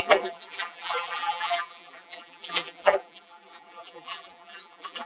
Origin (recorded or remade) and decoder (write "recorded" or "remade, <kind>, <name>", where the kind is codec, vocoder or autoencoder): remade, vocoder, BigVGAN v2